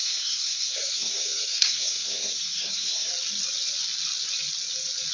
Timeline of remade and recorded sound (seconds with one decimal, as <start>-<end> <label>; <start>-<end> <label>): 0.0-3.1 remade; 3.1-5.1 recorded

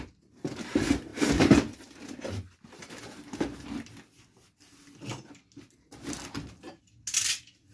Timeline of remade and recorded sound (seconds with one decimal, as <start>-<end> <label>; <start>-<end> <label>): 0.0-7.7 recorded

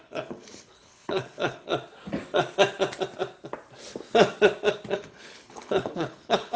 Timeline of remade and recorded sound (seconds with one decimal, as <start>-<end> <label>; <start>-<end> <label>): 0.0-1.7 remade; 1.7-4.9 recorded; 4.9-6.6 remade